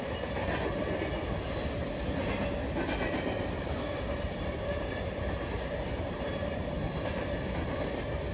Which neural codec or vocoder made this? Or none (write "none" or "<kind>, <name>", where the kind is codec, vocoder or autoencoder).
none